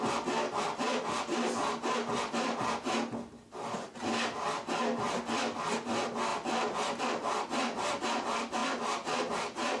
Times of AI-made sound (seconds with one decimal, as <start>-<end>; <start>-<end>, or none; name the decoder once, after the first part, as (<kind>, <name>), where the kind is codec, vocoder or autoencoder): none